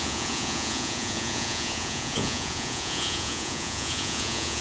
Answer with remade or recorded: remade